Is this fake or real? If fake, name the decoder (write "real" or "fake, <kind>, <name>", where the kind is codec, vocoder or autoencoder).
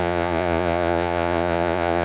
fake, vocoder, Vocos